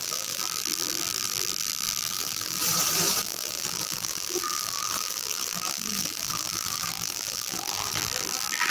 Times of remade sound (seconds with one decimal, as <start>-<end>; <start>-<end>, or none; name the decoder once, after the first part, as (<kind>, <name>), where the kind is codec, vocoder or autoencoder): 0.0-2.6 (vocoder, BigVGAN v2); 3.2-8.7